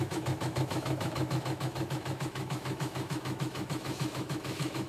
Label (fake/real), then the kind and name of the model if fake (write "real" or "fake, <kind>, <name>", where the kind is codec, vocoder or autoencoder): fake, autoencoder, DAC-VAE